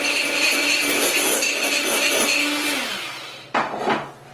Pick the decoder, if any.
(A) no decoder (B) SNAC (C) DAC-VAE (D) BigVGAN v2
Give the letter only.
A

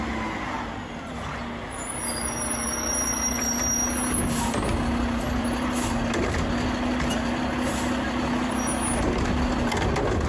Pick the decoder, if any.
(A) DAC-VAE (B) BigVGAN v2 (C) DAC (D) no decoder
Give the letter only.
D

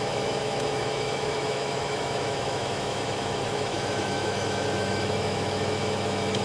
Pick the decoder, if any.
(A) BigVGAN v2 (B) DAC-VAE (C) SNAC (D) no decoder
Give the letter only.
B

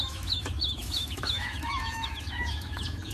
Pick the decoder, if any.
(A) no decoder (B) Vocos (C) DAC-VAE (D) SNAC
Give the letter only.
C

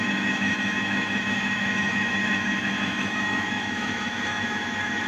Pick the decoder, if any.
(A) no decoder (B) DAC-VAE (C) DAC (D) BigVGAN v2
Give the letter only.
B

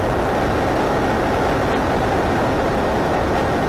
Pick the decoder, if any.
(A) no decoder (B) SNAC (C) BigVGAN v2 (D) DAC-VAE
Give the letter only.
A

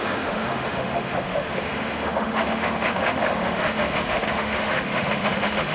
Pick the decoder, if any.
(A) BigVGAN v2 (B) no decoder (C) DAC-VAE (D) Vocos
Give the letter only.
C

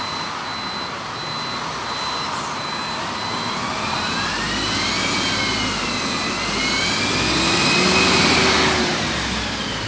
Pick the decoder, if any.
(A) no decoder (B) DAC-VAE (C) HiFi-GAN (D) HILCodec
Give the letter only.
A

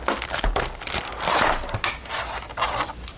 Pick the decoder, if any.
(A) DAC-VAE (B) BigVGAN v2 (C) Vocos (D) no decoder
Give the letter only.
D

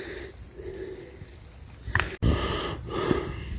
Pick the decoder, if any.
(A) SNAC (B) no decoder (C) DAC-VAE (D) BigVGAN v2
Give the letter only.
B